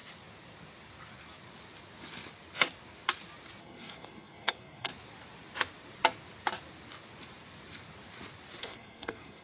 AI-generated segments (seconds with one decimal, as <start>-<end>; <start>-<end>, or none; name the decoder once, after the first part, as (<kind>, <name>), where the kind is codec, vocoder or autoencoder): 3.6-4.9 (codec, SNAC); 8.6-9.4